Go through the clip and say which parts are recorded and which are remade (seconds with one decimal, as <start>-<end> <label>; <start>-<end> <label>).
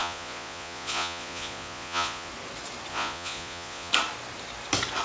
0.0-2.3 remade; 2.3-2.9 recorded; 2.9-3.9 remade; 3.9-5.0 recorded